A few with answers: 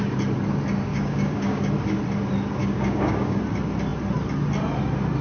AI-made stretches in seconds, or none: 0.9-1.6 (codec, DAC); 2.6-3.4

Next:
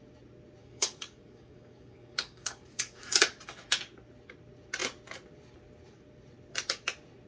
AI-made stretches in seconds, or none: 0.6-3.2 (codec, DAC)